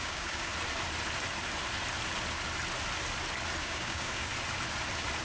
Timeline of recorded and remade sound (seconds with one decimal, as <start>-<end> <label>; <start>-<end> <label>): 0.0-0.5 remade; 0.5-3.6 recorded; 3.6-4.3 remade; 4.3-5.2 recorded